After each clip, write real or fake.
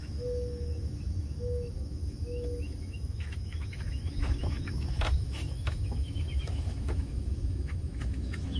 fake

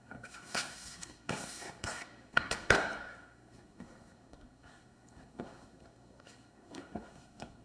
fake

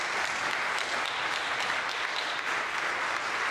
real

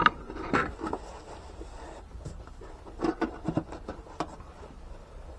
real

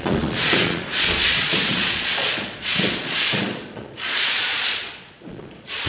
fake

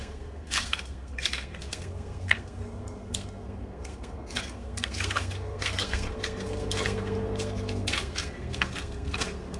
fake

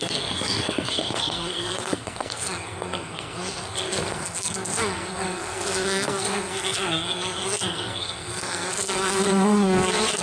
fake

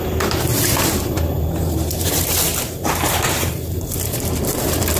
fake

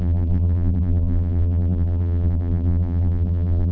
fake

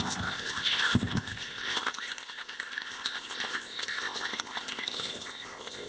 fake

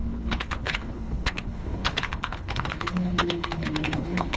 fake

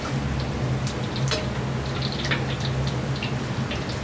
real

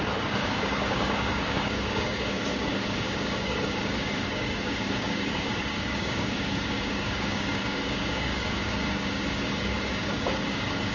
fake